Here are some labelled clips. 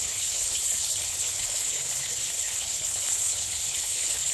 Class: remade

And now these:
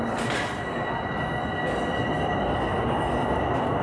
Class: recorded